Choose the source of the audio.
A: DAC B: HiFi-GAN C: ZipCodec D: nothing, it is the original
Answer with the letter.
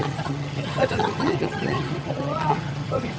B